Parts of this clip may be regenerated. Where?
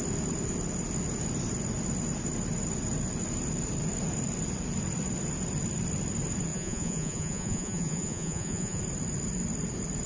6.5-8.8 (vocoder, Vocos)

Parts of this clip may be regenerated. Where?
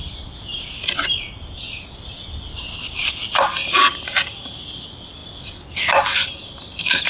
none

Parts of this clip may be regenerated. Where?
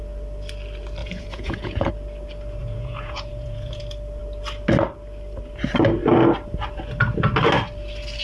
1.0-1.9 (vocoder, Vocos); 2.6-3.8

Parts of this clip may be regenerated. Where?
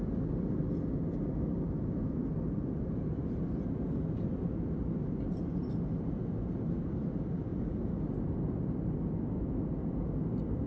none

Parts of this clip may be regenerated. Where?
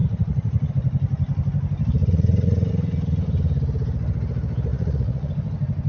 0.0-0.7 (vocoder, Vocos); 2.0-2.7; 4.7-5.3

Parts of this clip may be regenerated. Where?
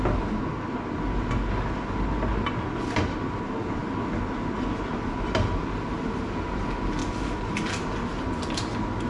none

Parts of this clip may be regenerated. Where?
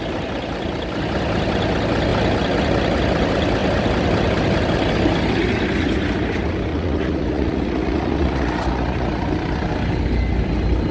6.7-9.3 (vocoder, Vocos)